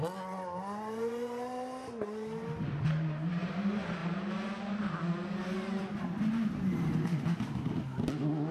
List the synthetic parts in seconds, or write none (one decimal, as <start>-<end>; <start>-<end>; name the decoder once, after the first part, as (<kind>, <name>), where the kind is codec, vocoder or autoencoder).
none